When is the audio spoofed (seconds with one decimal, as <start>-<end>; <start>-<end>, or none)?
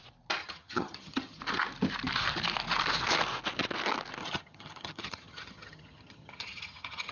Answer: 0.4-1.4; 4.2-7.1